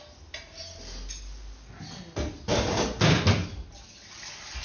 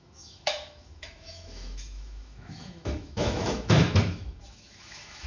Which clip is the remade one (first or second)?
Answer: second